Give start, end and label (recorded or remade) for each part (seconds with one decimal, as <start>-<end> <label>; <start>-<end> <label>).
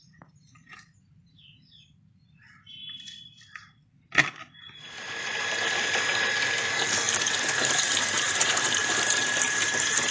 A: 0.0-2.8 remade; 2.8-7.6 recorded; 7.6-10.1 remade